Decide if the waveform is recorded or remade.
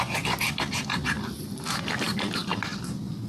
recorded